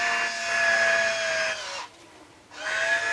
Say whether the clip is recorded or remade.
recorded